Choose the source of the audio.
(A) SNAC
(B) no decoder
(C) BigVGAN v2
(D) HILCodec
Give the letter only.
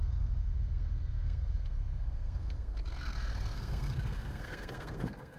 A